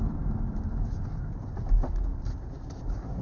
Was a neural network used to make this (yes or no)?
no